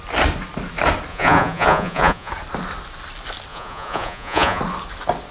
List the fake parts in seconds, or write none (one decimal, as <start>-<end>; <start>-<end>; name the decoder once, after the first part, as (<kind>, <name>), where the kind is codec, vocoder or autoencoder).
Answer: 1.1-2.3 (vocoder, Vocos); 3.5-4.6